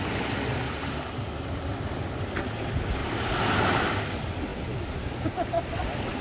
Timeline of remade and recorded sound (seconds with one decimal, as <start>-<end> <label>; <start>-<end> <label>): 0.0-3.0 recorded; 3.0-4.0 remade; 4.0-6.2 recorded